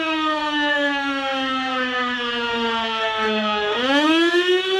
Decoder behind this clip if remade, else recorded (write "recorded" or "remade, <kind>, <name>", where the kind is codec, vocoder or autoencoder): remade, autoencoder, DAC-VAE